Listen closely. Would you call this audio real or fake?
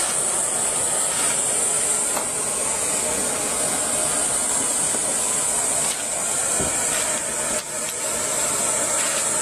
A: real